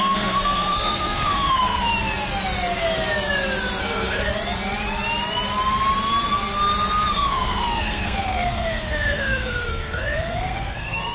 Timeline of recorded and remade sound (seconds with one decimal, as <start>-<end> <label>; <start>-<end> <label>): 0.0-1.9 remade; 1.9-3.8 recorded; 3.8-4.3 remade; 4.3-7.1 recorded; 7.1-11.1 remade